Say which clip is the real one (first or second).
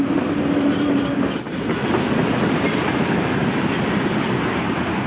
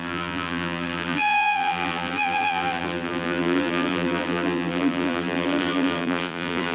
first